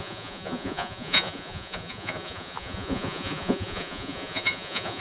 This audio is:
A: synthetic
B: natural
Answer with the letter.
A